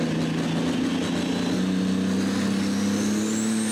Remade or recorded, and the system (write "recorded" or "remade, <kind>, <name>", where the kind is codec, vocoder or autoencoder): recorded